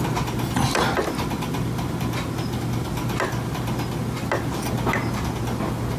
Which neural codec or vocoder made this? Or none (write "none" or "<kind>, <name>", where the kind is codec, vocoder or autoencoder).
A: none